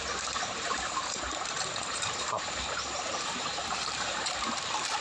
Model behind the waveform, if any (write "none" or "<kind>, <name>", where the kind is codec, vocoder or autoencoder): vocoder, BigVGAN v2